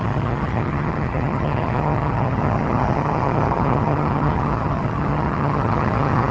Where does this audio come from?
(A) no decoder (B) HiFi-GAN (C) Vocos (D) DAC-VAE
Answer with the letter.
B